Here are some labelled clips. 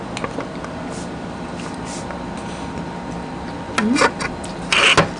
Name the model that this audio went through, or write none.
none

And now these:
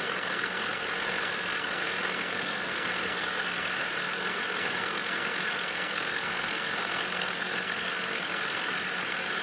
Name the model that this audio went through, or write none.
codec, SNAC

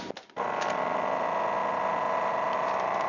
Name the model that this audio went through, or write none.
none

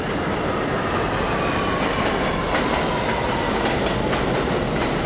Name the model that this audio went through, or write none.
none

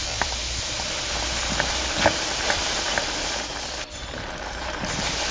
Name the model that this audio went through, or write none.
vocoder, BigVGAN v2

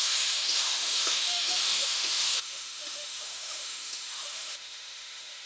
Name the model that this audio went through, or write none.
autoencoder, DAC-VAE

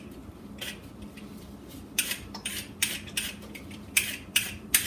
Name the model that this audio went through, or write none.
vocoder, BigVGAN v2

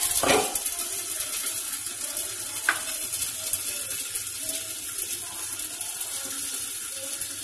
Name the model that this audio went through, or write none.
none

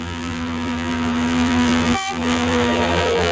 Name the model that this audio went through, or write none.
vocoder, BigVGAN v2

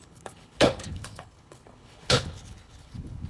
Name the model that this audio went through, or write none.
codec, HILCodec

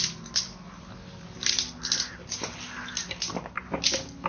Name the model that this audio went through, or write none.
none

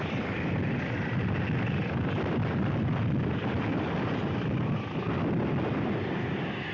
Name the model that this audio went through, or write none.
none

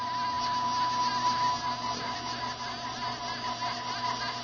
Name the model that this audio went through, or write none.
none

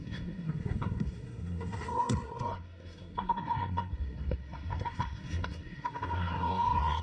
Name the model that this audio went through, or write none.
codec, SNAC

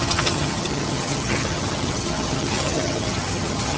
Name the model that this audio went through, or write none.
vocoder, HiFi-GAN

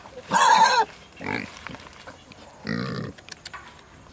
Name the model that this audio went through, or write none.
none